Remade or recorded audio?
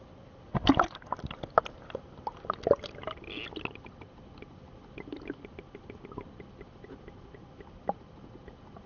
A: recorded